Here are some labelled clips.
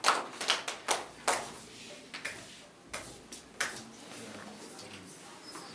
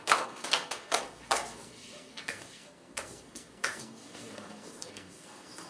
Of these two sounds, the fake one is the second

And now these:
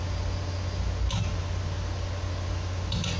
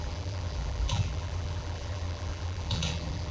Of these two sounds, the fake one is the second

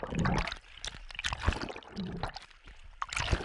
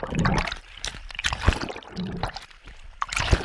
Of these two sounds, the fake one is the second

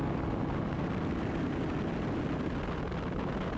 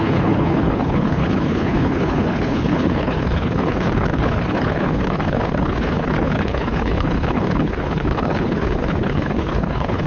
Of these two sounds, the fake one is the second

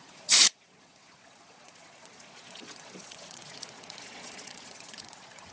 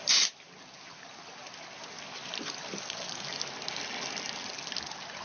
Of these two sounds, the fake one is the first